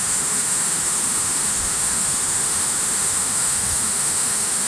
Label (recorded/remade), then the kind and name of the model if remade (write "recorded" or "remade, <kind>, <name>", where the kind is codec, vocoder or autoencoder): remade, autoencoder, DAC-VAE